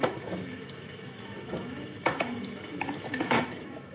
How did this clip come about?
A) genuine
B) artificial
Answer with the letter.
B